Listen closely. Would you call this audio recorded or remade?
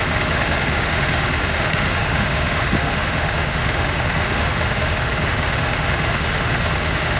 remade